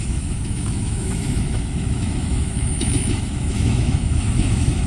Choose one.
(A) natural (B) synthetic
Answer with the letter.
B